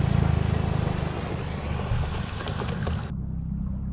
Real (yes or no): yes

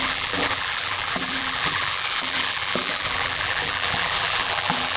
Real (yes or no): no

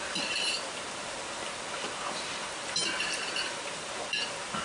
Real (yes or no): no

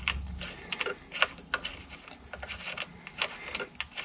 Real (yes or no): yes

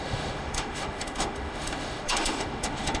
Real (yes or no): no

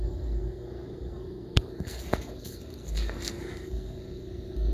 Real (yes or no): no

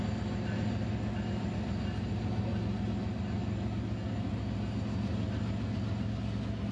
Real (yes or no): yes